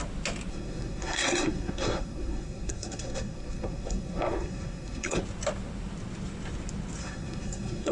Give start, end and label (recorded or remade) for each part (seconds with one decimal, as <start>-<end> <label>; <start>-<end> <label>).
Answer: 0.0-0.5 recorded; 0.5-5.2 remade; 5.2-7.0 recorded; 7.0-7.9 remade